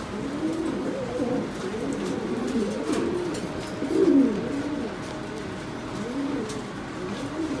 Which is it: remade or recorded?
recorded